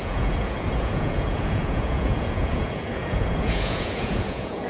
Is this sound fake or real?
fake